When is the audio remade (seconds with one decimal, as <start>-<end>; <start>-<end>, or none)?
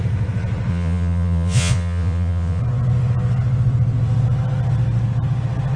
0.7-2.6